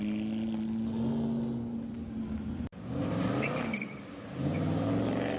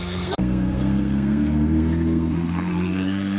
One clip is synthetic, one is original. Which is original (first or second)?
first